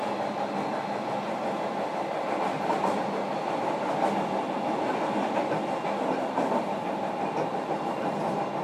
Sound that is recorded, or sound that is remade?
recorded